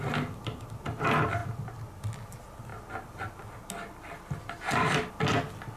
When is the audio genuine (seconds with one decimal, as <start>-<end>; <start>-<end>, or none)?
0.0-5.8